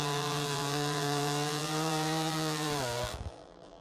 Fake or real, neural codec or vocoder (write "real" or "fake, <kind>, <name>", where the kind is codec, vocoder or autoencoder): fake, vocoder, BigVGAN v2